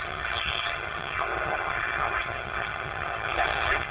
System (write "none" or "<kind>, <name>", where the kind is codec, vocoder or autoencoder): vocoder, HiFi-GAN